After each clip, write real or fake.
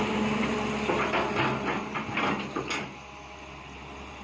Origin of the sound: real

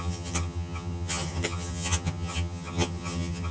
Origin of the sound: fake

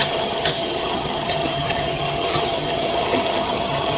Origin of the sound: fake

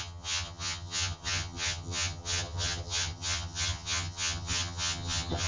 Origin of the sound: fake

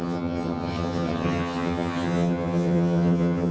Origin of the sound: fake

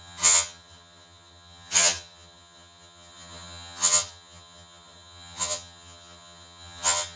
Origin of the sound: fake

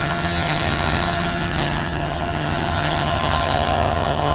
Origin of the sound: fake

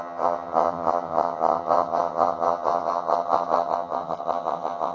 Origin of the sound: fake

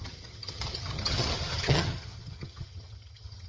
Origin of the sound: fake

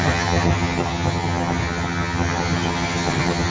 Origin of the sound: fake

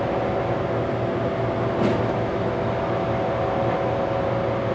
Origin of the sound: real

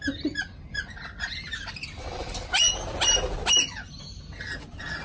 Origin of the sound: real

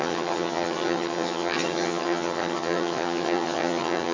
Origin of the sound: fake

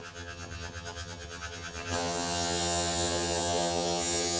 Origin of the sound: fake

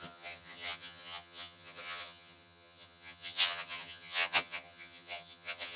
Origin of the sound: fake